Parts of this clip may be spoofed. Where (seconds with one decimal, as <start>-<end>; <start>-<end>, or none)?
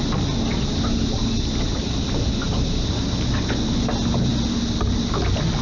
none